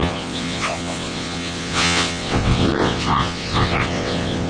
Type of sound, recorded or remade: remade